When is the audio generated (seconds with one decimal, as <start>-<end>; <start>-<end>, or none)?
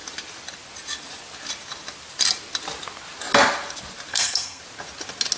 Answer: 4.1-4.6